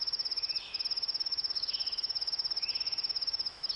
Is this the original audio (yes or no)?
no